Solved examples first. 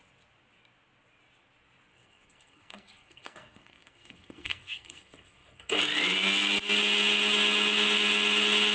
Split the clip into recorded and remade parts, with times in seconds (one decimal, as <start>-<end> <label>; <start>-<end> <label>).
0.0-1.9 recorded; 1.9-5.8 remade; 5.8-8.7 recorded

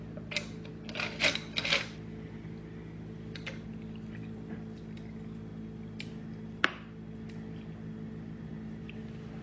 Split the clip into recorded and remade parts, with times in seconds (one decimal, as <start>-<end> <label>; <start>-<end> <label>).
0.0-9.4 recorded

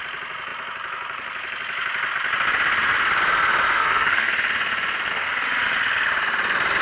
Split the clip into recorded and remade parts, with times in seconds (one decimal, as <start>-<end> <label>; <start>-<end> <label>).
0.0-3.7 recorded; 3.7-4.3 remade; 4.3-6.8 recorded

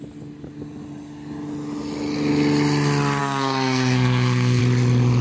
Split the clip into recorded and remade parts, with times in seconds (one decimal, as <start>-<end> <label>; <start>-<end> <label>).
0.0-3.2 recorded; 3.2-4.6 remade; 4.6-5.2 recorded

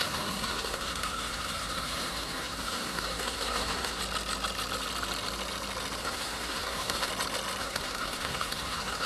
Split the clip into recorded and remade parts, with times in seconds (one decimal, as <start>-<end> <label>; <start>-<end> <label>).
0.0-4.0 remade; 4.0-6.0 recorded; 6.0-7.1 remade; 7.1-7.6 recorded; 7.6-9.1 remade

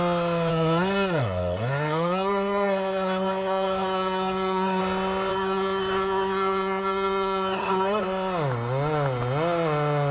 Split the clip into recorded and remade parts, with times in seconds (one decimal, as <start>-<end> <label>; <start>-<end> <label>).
0.0-0.5 recorded; 0.5-4.8 remade; 4.8-5.3 recorded; 5.3-8.0 remade; 8.0-10.1 recorded

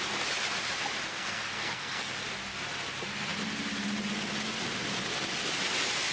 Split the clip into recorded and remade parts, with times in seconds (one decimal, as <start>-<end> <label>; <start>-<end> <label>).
0.0-1.1 recorded; 1.1-2.1 remade; 2.1-6.1 recorded

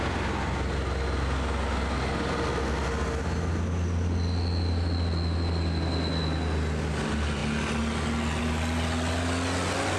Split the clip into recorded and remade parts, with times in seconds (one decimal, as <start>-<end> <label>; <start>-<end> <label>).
0.0-10.0 recorded